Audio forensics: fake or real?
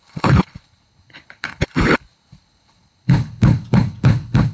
fake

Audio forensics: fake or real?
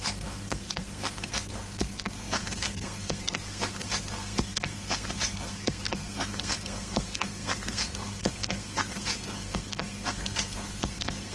fake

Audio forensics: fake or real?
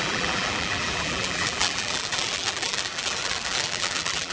fake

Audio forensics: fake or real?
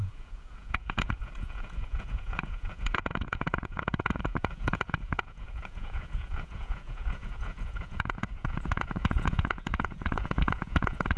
fake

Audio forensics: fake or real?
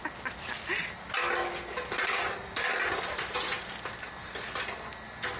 real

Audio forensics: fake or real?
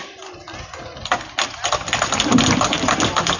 real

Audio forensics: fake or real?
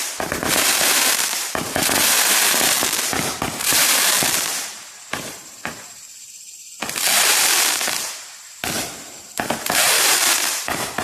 fake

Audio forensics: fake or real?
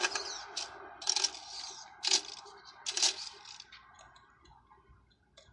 real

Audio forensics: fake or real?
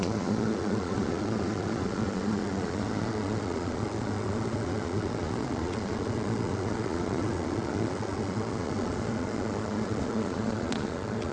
fake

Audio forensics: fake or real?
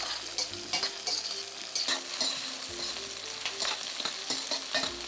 real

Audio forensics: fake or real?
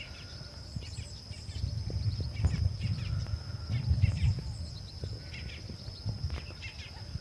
real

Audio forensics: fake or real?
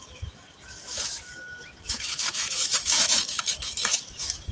fake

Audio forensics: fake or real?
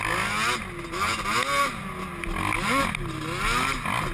real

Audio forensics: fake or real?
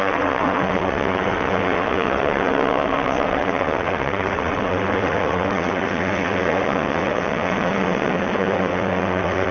fake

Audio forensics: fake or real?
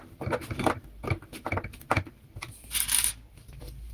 real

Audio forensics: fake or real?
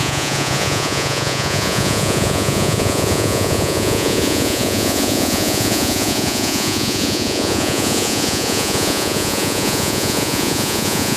fake